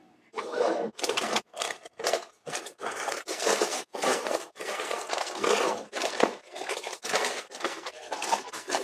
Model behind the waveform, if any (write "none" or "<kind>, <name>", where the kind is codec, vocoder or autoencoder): codec, SNAC